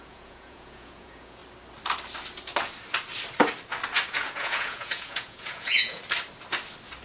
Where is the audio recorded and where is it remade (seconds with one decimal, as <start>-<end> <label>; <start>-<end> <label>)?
0.0-1.4 remade; 1.4-4.1 recorded; 4.1-6.0 remade; 6.0-7.0 recorded